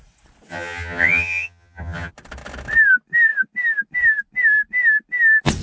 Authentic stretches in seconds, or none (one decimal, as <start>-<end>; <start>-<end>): 0.0-0.5; 2.1-5.6